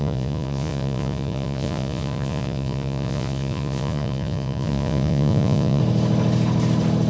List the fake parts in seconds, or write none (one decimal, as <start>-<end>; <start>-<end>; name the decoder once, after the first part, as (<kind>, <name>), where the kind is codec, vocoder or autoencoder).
0.0-5.8 (vocoder, Vocos)